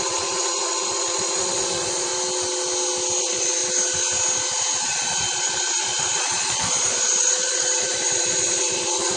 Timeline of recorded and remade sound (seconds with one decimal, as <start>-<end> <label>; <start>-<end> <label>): 0.0-2.1 remade; 2.1-3.2 recorded; 3.2-3.6 remade; 3.6-4.8 recorded; 4.8-9.2 remade